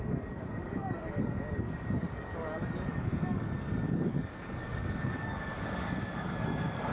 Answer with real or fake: fake